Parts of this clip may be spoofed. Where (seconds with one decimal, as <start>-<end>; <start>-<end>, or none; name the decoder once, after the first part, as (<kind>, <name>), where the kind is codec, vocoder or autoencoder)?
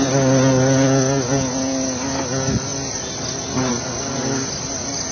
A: none